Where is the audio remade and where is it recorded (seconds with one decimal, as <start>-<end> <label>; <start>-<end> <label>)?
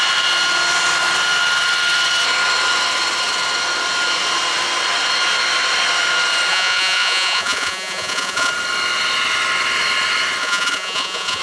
0.0-6.5 recorded; 6.5-8.5 remade; 8.5-10.4 recorded; 10.4-11.4 remade